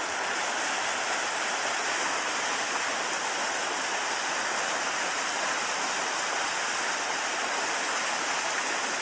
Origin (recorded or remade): recorded